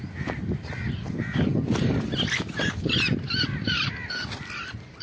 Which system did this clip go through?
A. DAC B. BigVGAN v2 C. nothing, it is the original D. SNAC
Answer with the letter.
C